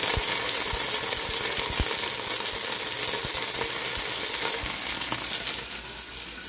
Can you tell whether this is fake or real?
real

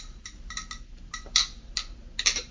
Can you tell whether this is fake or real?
real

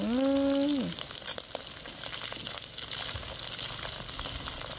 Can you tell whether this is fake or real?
real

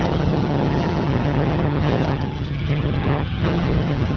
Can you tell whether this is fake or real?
fake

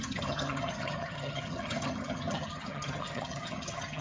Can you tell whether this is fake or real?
fake